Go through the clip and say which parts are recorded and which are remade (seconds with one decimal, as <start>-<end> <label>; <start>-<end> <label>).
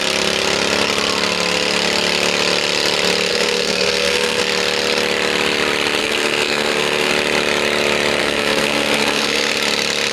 0.0-3.3 recorded; 3.3-4.4 remade; 4.4-6.0 recorded; 6.0-7.1 remade; 7.1-8.2 recorded; 8.2-9.5 remade; 9.5-10.1 recorded